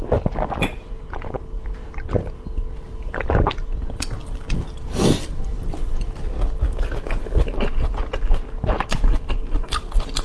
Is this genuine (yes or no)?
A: yes